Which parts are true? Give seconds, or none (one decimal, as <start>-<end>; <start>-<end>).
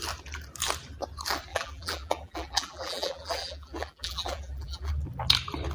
0.0-1.5; 4.9-5.7